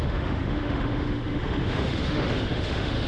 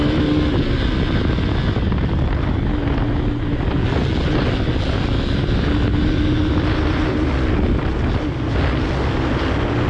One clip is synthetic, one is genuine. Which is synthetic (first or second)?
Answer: first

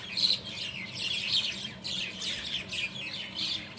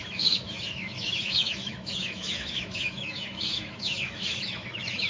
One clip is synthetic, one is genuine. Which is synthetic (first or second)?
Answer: second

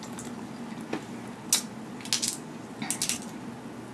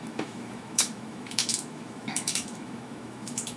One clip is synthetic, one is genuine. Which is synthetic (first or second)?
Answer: second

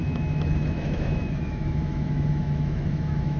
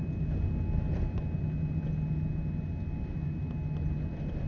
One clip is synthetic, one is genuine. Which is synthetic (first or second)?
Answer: first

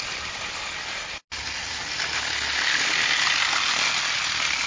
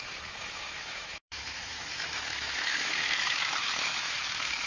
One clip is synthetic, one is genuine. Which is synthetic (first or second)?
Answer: second